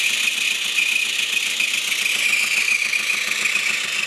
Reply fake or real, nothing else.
fake